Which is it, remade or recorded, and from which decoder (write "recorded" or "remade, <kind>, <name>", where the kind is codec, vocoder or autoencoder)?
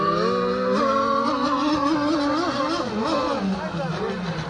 recorded